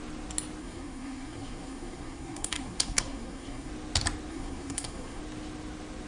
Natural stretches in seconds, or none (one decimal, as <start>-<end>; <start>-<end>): 0.0-0.6; 3.7-4.3; 5.2-6.1